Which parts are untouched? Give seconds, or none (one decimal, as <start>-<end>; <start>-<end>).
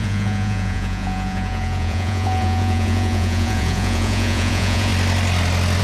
4.9-5.8